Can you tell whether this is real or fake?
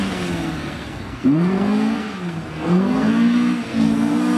fake